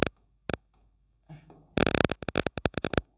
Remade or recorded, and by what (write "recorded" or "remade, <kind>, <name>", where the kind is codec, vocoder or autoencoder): remade, codec, DAC